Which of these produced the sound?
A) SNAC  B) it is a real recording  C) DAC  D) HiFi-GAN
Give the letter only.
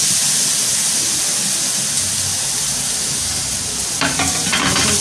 B